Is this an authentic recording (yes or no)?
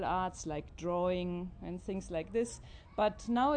yes